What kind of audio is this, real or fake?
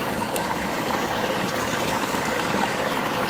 fake